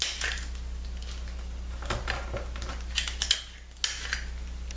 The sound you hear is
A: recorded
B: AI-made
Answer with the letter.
A